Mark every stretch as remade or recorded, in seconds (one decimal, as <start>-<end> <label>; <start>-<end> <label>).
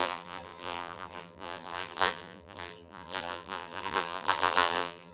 0.0-5.1 remade